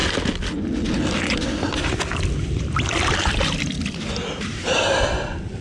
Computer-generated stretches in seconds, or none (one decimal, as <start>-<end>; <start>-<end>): none